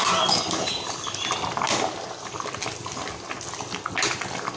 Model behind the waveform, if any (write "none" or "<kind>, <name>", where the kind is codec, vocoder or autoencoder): none